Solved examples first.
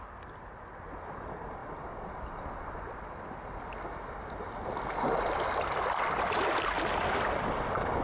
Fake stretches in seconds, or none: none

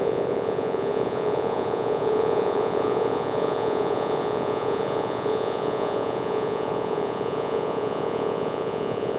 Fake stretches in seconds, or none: 0.0-9.2 (vocoder, Vocos)